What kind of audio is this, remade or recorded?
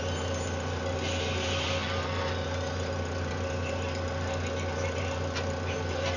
recorded